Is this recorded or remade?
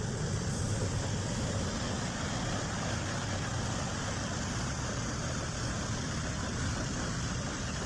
remade